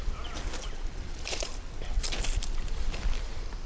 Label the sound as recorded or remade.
remade